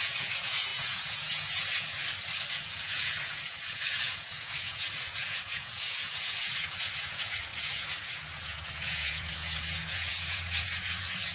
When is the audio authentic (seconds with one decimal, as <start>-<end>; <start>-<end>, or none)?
2.0-2.5